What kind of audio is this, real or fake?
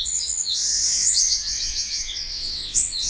fake